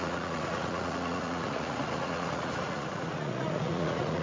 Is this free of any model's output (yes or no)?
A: no